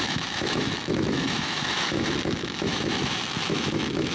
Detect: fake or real fake